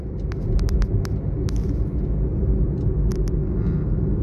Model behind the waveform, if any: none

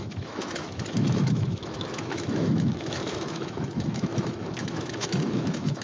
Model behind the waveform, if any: autoencoder, DAC-VAE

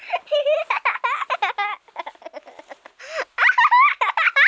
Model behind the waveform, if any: none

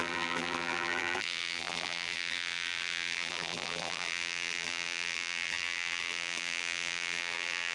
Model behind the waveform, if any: vocoder, BigVGAN v2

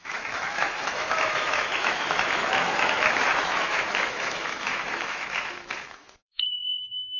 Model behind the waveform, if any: autoencoder, DAC-VAE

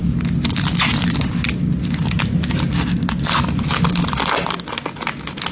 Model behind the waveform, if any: none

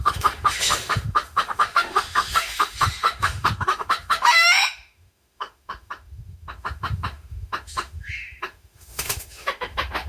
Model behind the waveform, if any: autoencoder, DAC-VAE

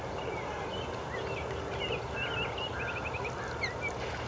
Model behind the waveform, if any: none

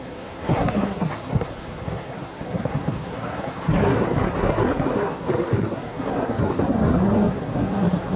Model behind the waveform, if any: codec, SNAC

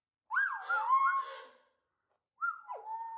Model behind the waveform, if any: none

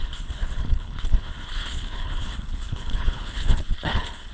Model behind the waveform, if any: codec, HILCodec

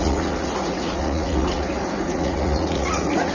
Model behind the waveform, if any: vocoder, Vocos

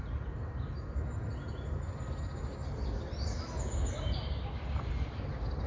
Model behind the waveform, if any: none